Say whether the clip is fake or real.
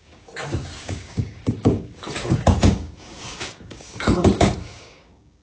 fake